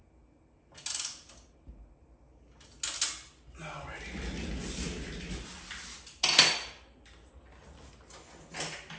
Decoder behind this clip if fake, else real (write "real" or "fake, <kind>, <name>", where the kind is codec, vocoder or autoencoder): real